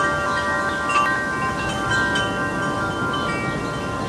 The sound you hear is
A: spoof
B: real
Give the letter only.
B